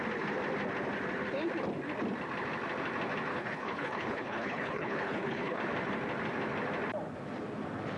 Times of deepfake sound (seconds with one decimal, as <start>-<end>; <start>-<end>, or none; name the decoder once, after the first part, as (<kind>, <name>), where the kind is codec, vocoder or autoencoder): 3.3-5.6 (codec, HILCodec)